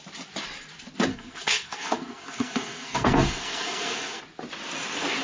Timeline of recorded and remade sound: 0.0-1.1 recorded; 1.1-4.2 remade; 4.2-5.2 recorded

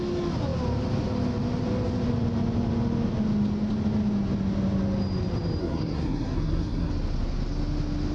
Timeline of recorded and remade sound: 0.0-5.6 recorded; 5.6-6.9 remade; 6.9-8.1 recorded

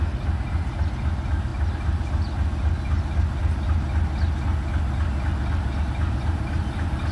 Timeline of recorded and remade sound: 0.0-7.1 recorded

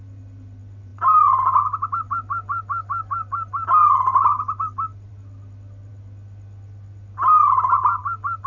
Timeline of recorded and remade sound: 0.0-8.5 recorded

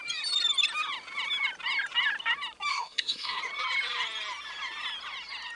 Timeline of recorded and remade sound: 0.0-2.7 recorded; 2.7-3.4 remade; 3.4-5.6 recorded

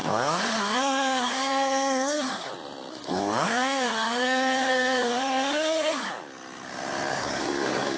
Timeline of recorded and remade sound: 0.0-2.5 remade; 2.5-2.9 recorded; 2.9-6.1 remade; 6.1-7.1 recorded; 7.1-8.0 remade

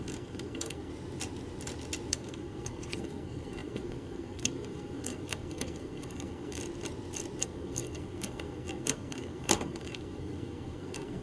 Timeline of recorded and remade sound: 0.0-0.9 remade; 0.9-2.1 recorded; 2.1-6.6 remade; 6.6-7.4 recorded; 7.4-11.2 remade

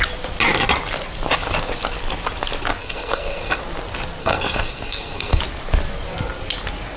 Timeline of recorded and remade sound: 0.0-2.8 recorded; 2.8-3.6 remade; 3.6-4.2 recorded; 4.2-5.4 remade; 5.4-7.0 recorded